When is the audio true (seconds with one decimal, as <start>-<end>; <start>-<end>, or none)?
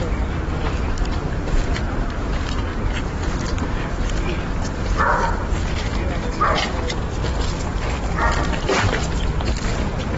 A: 2.7-3.4; 5.9-9.0